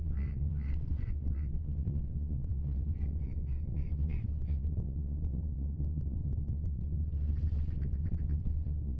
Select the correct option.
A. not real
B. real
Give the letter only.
A